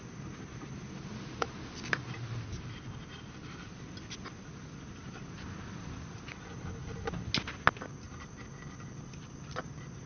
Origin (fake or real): real